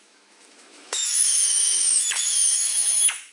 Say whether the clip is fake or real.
fake